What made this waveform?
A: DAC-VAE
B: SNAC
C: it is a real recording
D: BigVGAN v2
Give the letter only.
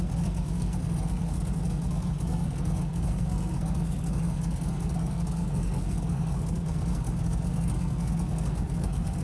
B